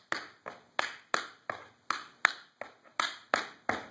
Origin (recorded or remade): recorded